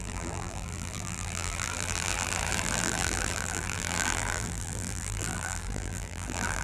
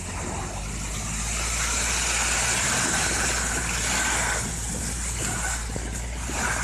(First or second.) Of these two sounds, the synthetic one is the first